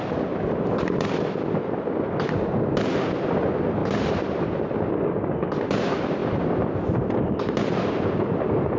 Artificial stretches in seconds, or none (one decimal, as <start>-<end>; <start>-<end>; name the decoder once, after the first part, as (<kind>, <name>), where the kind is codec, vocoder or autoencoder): 3.8-4.4 (vocoder, BigVGAN v2)